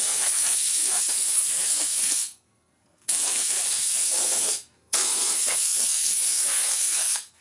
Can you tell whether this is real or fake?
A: fake